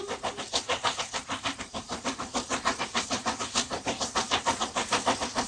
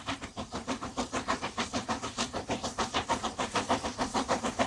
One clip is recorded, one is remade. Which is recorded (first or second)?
first